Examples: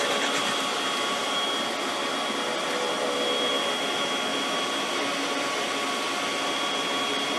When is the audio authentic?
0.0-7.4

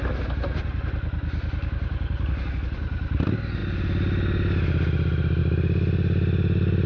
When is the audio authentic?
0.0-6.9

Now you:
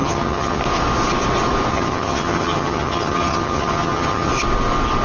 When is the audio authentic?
0.6-1.7; 4.3-5.0

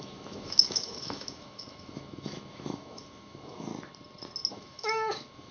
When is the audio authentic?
3.7-4.5

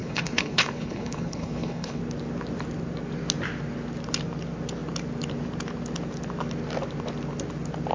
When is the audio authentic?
2.0-7.9

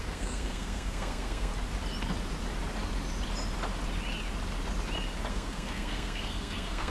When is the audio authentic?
1.5-5.3

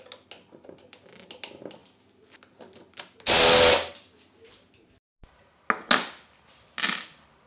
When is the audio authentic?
0.0-7.5

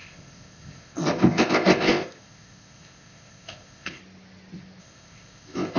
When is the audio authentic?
4.0-4.8